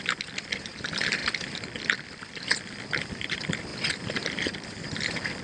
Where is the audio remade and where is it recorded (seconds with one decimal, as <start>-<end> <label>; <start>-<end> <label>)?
0.0-5.4 recorded